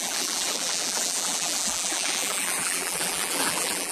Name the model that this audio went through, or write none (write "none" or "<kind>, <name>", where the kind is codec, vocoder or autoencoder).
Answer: vocoder, BigVGAN v2